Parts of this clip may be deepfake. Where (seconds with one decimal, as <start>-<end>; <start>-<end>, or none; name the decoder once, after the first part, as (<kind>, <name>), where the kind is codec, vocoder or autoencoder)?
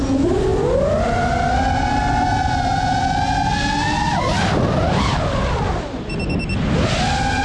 none